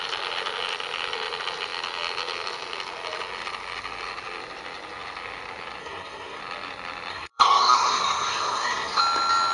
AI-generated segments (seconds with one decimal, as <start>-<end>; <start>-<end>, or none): 5.8-6.4; 7.1-9.0